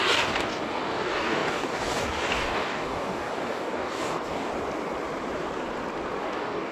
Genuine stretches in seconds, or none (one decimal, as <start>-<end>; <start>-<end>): 4.5-6.2